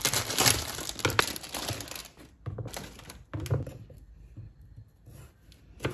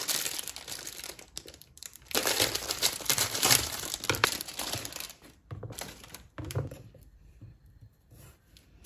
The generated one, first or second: second